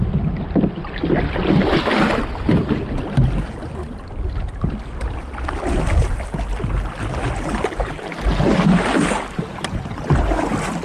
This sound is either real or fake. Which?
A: real